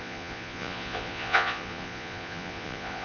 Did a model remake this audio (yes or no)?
yes